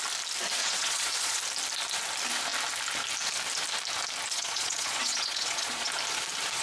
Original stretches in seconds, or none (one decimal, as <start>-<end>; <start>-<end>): 0.0-0.6; 1.4-4.3; 5.9-6.6